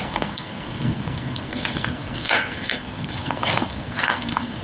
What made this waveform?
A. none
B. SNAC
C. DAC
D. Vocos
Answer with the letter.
B